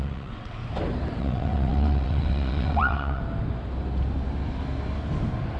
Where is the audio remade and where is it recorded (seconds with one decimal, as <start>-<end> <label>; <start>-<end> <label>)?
0.0-0.6 remade; 0.6-1.2 recorded; 1.2-3.2 remade; 3.2-5.6 recorded